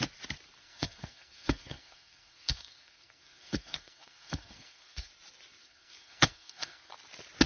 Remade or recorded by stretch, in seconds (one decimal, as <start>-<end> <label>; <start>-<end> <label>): 0.0-0.6 recorded; 0.6-5.1 remade; 5.1-5.6 recorded; 5.6-6.9 remade; 6.9-7.5 recorded